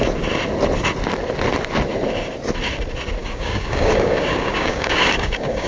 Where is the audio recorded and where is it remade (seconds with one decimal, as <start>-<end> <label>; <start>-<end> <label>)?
0.0-3.2 recorded; 3.2-5.7 remade